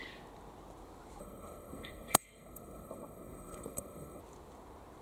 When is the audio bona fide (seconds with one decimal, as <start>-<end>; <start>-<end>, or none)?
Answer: 0.0-1.2; 4.2-5.0